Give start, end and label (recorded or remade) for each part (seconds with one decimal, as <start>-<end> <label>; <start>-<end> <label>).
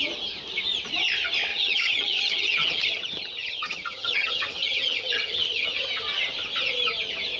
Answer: 0.0-1.5 recorded; 1.5-5.9 remade; 5.9-7.4 recorded